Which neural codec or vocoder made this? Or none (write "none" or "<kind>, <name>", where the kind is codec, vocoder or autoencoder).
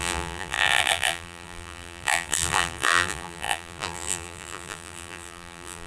vocoder, BigVGAN v2